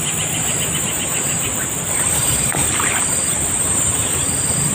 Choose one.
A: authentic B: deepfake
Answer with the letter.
A